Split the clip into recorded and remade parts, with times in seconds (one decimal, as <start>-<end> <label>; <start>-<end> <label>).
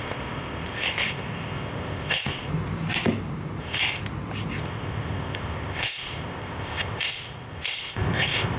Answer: 0.0-2.5 remade; 2.5-3.6 recorded; 3.6-4.0 remade; 4.0-4.6 recorded; 4.6-8.6 remade